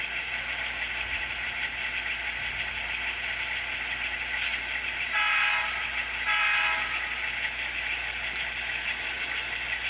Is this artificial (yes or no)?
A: no